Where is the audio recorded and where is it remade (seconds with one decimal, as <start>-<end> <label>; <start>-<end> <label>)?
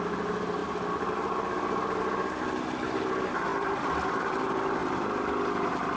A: 0.0-3.5 recorded; 3.5-4.2 remade; 4.2-4.8 recorded; 4.8-6.0 remade